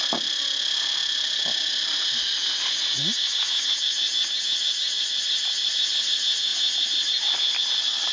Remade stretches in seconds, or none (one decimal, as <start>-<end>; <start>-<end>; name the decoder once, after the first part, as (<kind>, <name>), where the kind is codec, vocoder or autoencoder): none